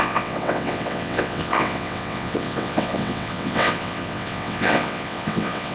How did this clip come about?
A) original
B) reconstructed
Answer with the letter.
B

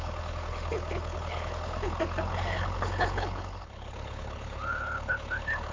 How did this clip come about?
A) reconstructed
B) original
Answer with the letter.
A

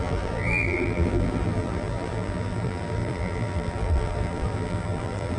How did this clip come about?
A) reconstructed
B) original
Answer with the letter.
A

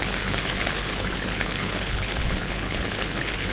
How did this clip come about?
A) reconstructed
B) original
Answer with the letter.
A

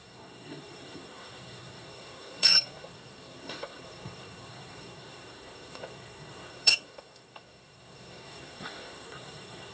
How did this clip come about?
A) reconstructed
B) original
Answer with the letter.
A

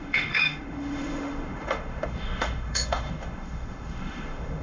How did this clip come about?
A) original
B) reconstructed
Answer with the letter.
B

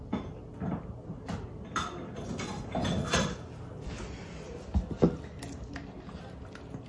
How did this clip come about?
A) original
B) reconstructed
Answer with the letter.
A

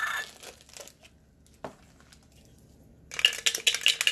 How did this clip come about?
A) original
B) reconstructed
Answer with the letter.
A